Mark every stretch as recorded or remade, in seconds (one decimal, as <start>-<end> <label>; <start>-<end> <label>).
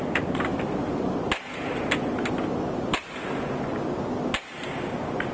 0.0-5.3 recorded